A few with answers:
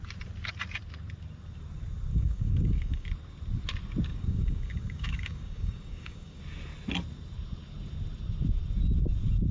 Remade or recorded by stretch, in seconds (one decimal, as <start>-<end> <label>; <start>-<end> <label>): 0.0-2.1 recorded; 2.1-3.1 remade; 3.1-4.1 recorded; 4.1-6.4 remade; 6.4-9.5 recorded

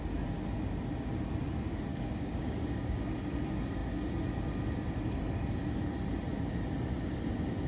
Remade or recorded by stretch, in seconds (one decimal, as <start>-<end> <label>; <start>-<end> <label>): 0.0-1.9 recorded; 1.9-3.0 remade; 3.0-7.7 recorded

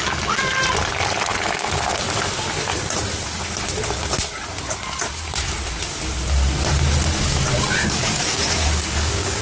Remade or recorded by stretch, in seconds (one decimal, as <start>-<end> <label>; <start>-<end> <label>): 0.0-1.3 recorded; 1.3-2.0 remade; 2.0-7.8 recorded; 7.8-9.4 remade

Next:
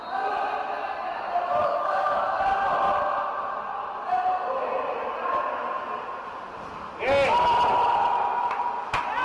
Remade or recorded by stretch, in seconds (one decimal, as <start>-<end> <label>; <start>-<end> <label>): 0.0-1.6 recorded; 1.6-2.4 remade; 2.4-9.2 recorded

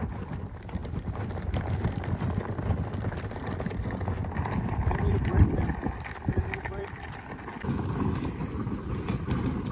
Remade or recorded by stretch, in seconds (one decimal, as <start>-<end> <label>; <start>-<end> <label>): 0.0-9.7 recorded